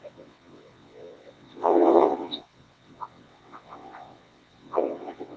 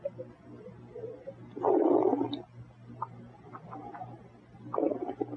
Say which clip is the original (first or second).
second